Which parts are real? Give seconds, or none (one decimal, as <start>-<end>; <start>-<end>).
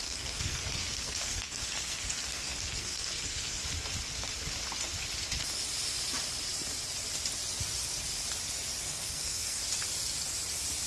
3.6-8.8; 9.6-10.9